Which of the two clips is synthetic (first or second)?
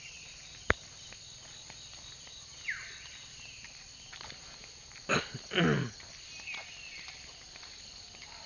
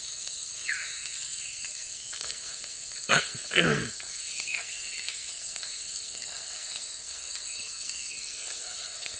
second